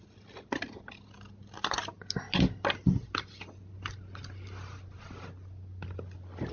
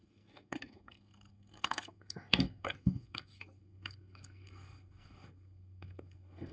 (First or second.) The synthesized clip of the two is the second